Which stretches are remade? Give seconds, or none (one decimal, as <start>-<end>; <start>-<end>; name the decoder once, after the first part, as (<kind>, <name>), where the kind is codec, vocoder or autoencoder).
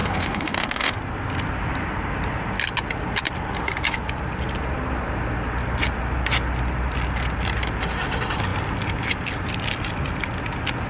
0.0-1.0 (autoencoder, DAC-VAE)